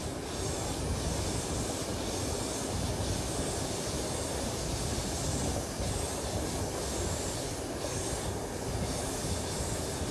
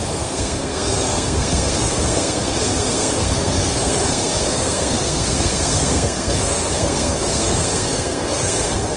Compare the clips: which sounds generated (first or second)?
second